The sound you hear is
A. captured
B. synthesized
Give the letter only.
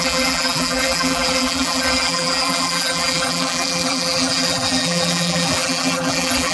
B